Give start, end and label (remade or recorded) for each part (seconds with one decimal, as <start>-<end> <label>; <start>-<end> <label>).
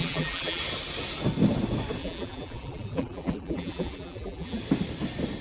0.0-0.6 remade; 0.6-2.0 recorded; 2.0-4.6 remade; 4.6-5.4 recorded